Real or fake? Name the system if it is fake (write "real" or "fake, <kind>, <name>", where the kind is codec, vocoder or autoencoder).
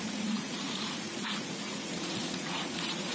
fake, vocoder, Vocos